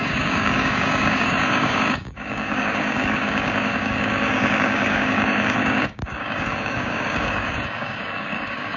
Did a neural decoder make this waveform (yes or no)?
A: yes